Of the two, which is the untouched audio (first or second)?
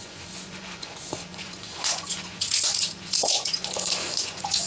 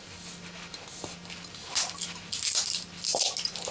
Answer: second